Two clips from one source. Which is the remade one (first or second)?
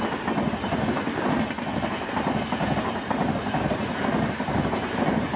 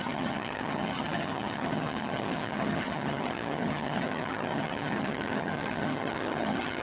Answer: second